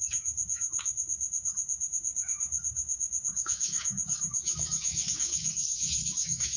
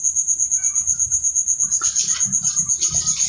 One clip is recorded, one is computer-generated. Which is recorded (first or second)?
second